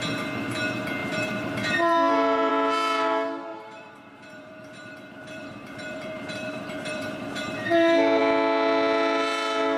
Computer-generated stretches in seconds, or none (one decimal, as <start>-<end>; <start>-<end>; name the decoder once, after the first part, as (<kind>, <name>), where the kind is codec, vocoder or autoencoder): 1.0-2.5 (vocoder, BigVGAN v2); 3.5-8.2